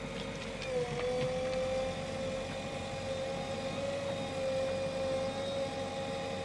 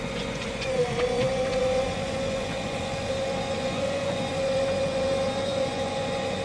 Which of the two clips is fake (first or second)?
second